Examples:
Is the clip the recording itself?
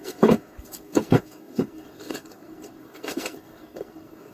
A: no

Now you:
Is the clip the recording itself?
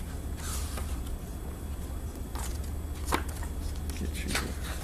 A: yes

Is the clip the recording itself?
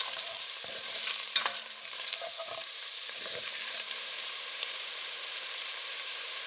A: no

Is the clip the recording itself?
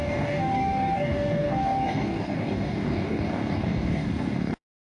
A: no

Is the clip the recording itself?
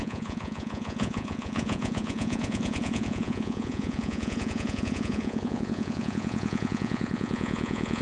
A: no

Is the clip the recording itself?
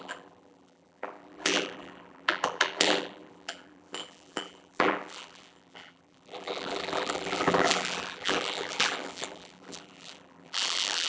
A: no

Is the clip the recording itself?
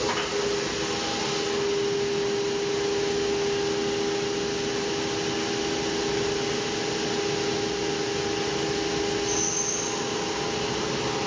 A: yes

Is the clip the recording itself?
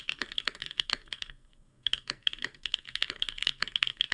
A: no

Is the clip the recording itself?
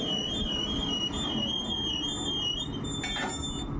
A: yes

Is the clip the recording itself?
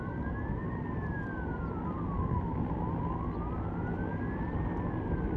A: yes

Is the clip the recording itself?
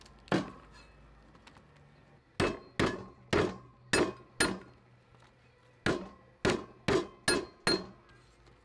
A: yes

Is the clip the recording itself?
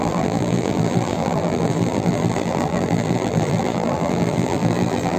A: no